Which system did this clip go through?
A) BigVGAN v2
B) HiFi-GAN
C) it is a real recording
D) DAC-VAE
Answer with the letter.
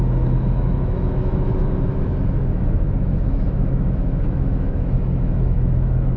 D